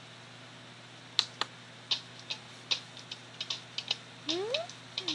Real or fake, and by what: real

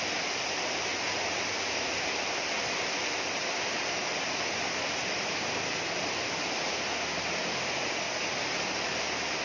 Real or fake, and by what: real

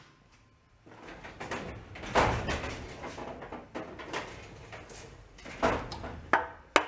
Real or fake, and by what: real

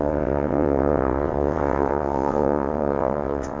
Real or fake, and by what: fake, vocoder, WaveNeXt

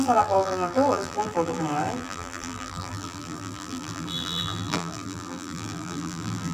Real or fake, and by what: fake, vocoder, BigVGAN v2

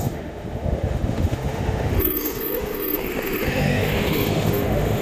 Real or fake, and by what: fake, autoencoder, DAC-VAE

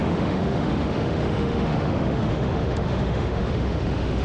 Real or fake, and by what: fake, autoencoder, DAC-VAE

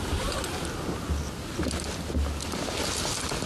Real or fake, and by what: real